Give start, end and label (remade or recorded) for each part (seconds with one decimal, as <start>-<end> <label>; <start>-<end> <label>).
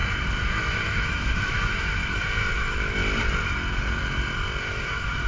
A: 0.0-0.5 recorded; 0.5-2.0 remade; 2.0-2.5 recorded; 2.5-3.0 remade; 3.0-4.6 recorded; 4.6-5.3 remade